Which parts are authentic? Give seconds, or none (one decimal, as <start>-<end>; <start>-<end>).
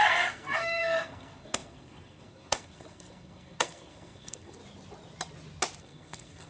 4.6-5.8